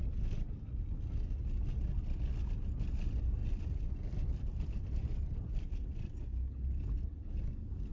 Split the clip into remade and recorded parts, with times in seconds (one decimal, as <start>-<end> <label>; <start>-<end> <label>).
0.0-3.4 recorded; 3.4-6.1 remade; 6.1-7.9 recorded